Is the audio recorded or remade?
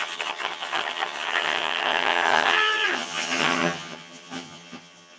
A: remade